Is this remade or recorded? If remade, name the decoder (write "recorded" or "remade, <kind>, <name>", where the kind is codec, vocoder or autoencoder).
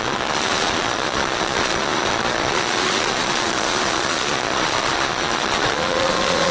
remade, vocoder, Vocos